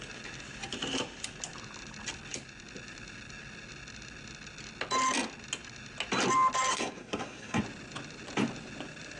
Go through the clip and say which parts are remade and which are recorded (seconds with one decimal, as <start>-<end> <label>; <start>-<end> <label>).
0.0-6.7 recorded; 6.7-7.6 remade; 7.6-9.2 recorded